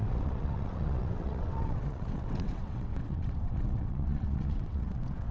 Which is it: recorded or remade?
remade